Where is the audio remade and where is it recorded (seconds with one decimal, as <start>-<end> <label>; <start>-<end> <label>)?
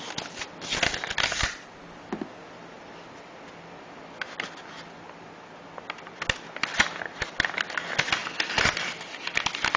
0.0-8.2 recorded; 8.2-9.8 remade